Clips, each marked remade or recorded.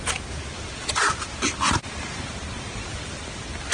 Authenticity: recorded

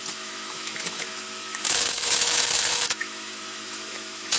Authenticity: remade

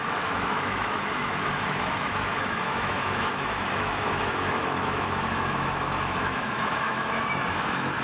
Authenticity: remade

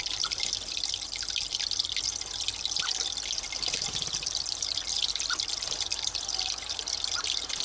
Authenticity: recorded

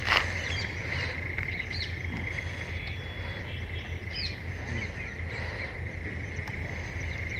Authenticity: recorded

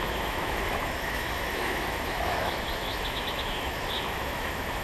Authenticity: remade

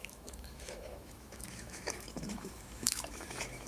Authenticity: remade